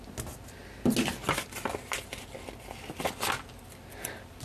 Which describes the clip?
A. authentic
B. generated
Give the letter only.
A